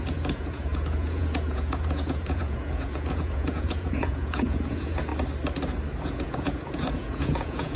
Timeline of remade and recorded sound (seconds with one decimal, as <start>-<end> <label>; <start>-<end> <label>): 0.0-5.1 remade; 5.1-6.0 recorded; 6.0-7.8 remade